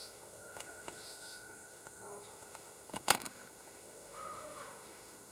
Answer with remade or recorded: remade